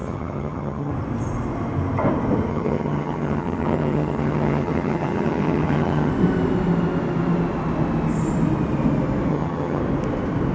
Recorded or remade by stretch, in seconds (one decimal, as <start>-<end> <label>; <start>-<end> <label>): 0.0-0.9 remade; 0.9-2.5 recorded; 2.5-6.1 remade; 6.1-9.3 recorded; 9.3-9.8 remade; 9.8-10.5 recorded